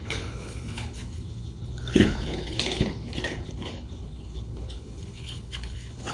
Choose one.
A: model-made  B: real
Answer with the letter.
A